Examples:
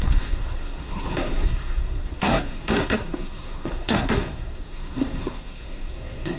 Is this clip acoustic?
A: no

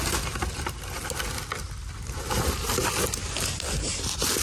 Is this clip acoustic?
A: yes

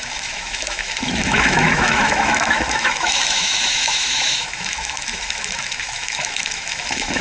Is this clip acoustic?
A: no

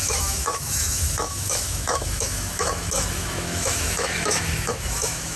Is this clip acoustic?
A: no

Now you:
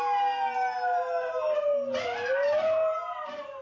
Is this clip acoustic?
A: yes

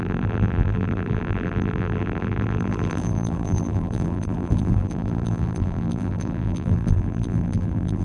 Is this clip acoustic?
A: no